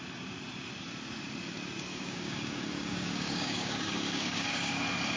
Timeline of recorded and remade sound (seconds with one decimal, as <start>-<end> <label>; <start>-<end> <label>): 0.0-1.9 recorded; 1.9-4.8 remade; 4.8-5.2 recorded

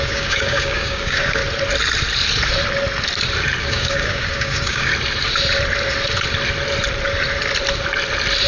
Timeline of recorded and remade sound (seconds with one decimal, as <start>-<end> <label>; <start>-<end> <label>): 0.0-1.4 remade; 1.4-3.6 recorded; 3.6-4.9 remade; 4.9-8.5 recorded

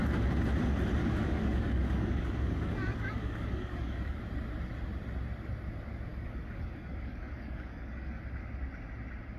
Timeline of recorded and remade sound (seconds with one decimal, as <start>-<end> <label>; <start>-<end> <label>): 0.0-1.0 recorded; 1.0-4.2 remade; 4.2-6.1 recorded; 6.1-8.2 remade; 8.2-9.4 recorded

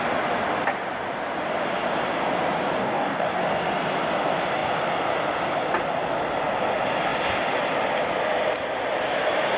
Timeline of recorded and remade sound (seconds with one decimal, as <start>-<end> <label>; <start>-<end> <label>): 0.0-2.8 recorded; 2.8-3.4 remade; 3.4-9.6 recorded

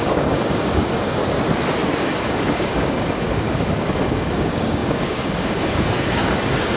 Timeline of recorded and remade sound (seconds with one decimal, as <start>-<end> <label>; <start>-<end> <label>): 0.0-1.2 remade; 1.2-2.0 recorded; 2.0-6.8 remade

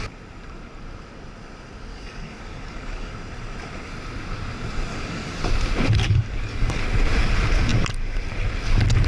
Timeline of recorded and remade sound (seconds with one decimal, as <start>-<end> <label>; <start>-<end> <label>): 0.0-1.9 recorded; 1.9-3.1 remade; 3.1-4.9 recorded; 4.9-5.5 remade; 5.5-6.0 recorded; 6.0-6.8 remade; 6.8-9.1 recorded